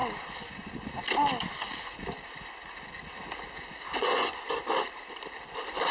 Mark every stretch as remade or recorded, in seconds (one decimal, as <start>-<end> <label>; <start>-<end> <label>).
0.0-4.0 recorded; 4.0-4.6 remade; 4.6-5.9 recorded